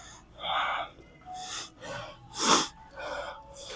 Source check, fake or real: real